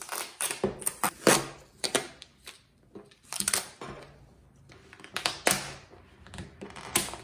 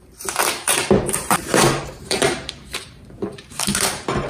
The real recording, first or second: first